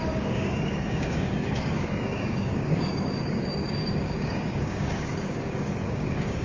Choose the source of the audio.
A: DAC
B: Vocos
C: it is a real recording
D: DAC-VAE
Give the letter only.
A